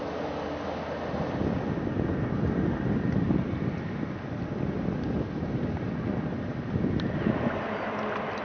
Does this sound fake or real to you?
real